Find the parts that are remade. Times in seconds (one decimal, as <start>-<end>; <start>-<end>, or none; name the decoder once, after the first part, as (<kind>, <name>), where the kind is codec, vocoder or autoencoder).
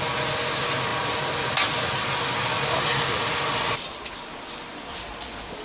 none